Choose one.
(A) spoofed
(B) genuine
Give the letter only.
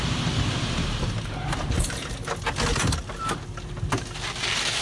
B